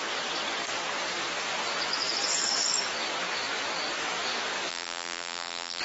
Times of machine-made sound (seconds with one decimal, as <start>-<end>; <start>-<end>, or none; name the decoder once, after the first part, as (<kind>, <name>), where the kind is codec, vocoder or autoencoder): 4.7-5.8 (vocoder, BigVGAN v2)